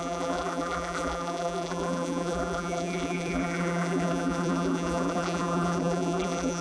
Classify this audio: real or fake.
fake